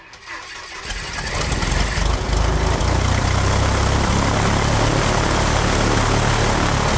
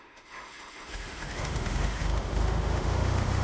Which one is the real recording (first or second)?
first